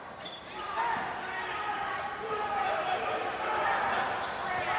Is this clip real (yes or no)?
yes